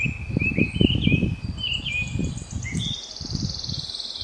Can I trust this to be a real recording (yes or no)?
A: yes